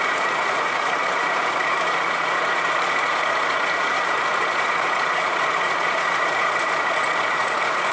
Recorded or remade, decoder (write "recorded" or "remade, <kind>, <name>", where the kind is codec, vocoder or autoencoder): remade, vocoder, Vocos